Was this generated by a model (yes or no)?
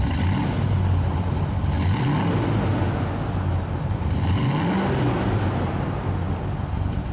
no